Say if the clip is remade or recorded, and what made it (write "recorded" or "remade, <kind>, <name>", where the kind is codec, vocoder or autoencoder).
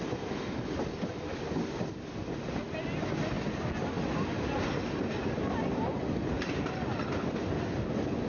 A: recorded